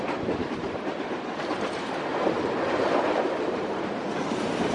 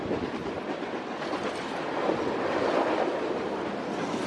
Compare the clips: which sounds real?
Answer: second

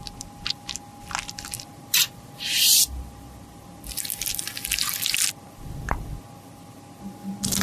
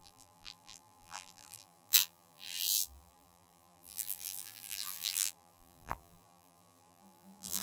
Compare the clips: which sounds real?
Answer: first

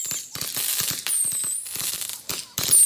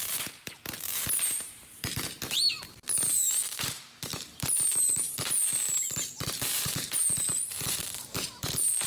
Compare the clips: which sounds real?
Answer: first